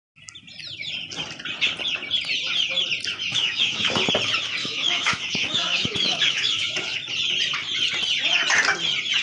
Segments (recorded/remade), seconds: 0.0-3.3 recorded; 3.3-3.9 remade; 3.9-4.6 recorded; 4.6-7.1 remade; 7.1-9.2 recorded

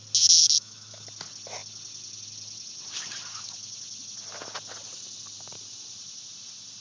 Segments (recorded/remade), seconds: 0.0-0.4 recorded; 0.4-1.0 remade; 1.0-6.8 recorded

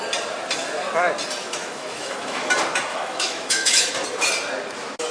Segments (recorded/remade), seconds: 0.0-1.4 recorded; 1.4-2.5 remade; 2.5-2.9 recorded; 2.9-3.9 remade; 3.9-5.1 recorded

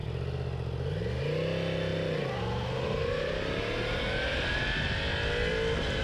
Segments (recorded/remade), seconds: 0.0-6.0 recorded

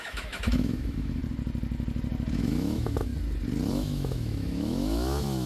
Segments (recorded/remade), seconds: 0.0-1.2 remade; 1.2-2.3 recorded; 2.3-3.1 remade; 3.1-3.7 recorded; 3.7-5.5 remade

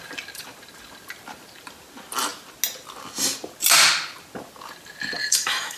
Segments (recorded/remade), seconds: 0.0-5.2 recorded; 5.2-5.8 remade